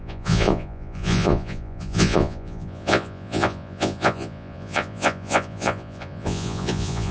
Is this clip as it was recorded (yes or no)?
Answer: no